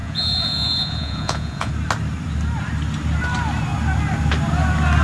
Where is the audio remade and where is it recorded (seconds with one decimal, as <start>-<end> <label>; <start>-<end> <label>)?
0.0-1.7 remade; 1.7-5.0 recorded